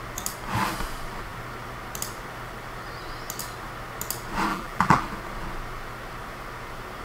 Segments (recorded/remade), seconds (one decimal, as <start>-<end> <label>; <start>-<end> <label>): 0.0-4.5 recorded; 4.5-5.0 remade; 5.0-7.0 recorded